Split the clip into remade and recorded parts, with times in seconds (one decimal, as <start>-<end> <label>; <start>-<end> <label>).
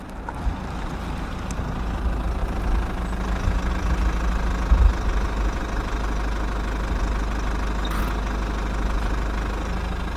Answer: 0.0-10.2 recorded